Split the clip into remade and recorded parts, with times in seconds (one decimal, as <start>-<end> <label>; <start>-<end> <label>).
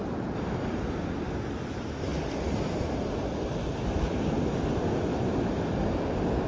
0.0-6.5 recorded